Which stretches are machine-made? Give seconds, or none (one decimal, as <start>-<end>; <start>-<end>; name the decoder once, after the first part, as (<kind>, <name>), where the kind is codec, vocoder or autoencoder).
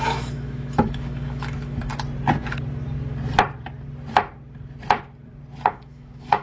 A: 0.0-1.9 (autoencoder, DAC-VAE); 5.7-6.4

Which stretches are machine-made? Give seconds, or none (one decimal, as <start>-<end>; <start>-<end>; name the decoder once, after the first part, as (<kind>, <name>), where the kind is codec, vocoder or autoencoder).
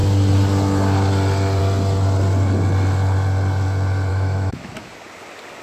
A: 4.1-4.9 (autoencoder, DAC-VAE)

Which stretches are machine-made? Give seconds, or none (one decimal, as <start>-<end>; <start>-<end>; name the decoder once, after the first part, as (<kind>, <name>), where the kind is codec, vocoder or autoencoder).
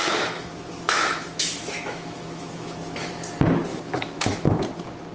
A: 0.0-3.1 (autoencoder, DAC-VAE); 3.7-4.6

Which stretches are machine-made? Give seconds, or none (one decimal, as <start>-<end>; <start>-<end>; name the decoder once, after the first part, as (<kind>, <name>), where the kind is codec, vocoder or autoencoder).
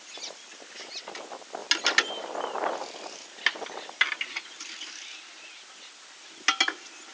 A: none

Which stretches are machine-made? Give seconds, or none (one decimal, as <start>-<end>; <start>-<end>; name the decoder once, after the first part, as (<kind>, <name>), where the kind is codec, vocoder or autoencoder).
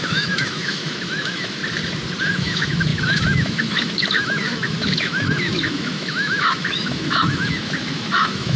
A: 0.0-1.6 (autoencoder, DAC-VAE); 2.2-8.6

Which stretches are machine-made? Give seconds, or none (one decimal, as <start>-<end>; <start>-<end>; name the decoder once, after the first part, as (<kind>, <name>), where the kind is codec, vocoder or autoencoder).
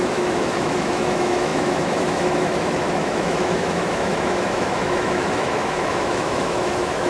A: 0.0-7.1 (autoencoder, DAC-VAE)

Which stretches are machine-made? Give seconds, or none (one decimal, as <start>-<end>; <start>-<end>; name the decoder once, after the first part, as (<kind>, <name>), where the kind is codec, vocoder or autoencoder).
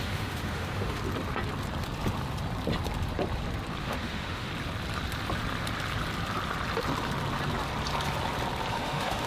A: 0.0-1.0 (autoencoder, DAC-VAE); 3.8-4.5; 8.7-9.3